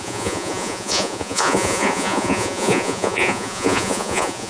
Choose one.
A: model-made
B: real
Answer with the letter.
A